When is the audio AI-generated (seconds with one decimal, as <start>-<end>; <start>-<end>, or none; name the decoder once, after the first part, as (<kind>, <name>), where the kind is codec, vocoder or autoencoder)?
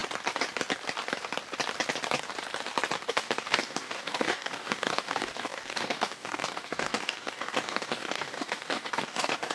3.1-9.5 (codec, DAC)